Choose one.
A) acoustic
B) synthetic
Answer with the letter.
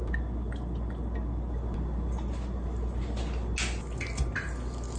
A